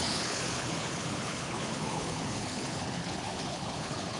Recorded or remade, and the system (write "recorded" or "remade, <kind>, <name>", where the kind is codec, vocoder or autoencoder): remade, codec, HILCodec